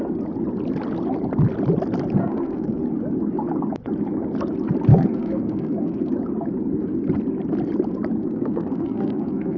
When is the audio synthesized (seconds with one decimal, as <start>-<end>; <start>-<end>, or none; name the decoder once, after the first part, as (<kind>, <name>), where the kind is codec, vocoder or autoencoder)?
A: 2.2-2.8 (codec, SNAC); 4.9-6.1; 8.2-9.6